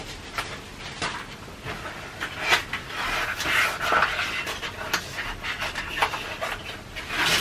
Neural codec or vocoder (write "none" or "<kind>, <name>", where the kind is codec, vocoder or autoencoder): none